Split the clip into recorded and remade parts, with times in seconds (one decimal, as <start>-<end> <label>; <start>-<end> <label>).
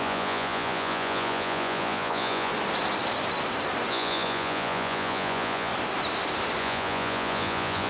0.0-2.5 remade; 2.5-3.9 recorded; 3.9-5.7 remade; 5.7-6.6 recorded; 6.6-7.9 remade